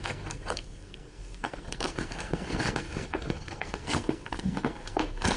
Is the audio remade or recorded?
remade